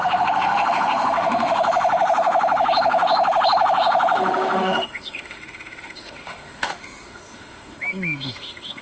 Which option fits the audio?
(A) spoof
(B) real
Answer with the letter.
A